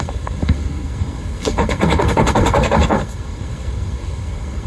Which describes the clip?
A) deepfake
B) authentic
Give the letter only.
A